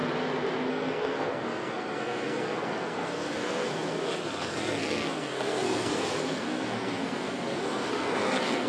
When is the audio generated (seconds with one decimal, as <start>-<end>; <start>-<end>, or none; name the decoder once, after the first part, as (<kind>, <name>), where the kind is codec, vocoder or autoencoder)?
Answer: 0.7-8.7 (codec, SNAC)